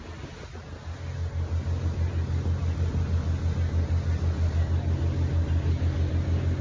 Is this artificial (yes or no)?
no